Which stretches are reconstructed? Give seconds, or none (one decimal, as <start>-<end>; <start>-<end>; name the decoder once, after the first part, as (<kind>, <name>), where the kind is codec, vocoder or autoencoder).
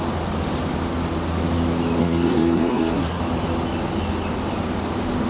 2.0-3.2 (codec, SNAC)